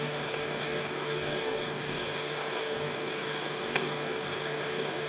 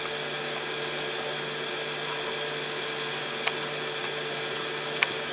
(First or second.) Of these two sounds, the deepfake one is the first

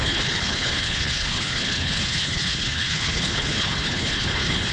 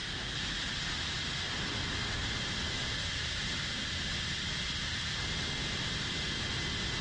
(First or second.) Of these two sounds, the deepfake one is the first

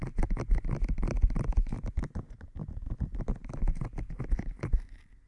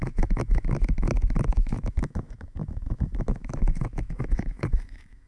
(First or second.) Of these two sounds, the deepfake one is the second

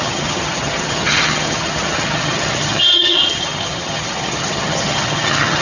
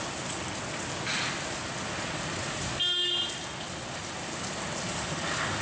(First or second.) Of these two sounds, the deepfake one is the first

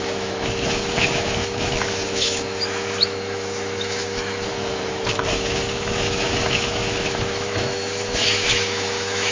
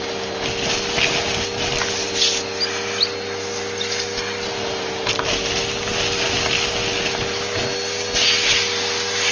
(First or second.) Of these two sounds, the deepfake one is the first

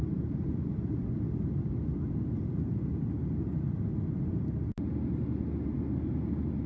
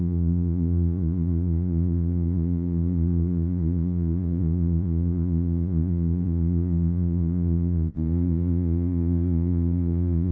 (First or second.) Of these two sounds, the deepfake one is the second